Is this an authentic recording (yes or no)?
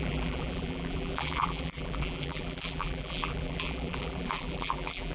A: no